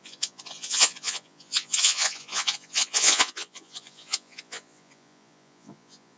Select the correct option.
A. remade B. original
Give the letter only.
A